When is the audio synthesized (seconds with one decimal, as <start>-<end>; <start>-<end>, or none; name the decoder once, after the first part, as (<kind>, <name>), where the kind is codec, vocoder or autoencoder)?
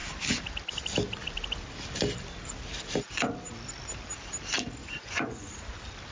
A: 4.8-5.5 (vocoder, Vocos)